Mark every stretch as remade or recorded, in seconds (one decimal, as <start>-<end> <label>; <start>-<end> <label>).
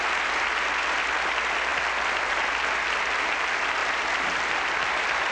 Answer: 0.0-5.3 recorded